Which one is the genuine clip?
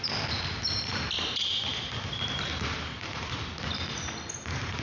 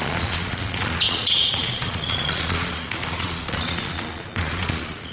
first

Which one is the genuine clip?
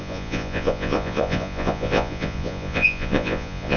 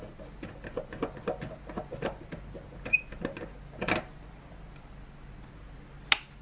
second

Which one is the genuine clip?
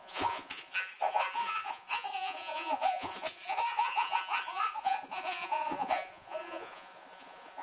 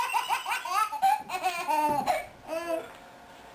second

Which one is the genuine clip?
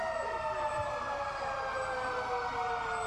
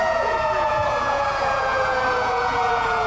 first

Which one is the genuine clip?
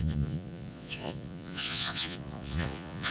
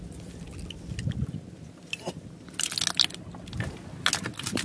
second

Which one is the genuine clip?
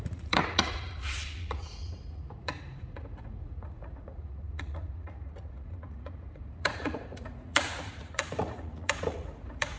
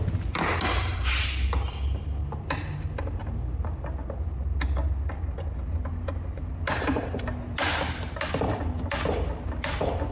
second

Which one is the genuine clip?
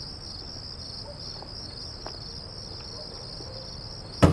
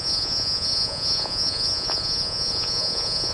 first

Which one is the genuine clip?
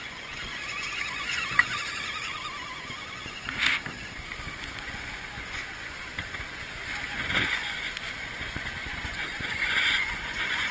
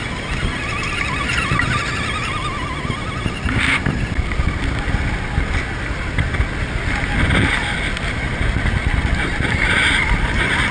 second